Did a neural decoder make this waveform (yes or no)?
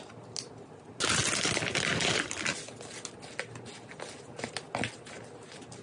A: no